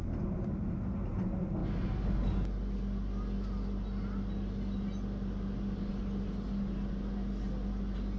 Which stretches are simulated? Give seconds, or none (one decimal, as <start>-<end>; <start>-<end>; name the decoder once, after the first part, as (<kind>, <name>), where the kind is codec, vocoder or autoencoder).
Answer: none